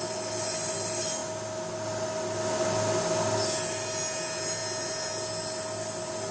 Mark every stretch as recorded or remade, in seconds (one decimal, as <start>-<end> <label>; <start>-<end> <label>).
0.0-6.3 recorded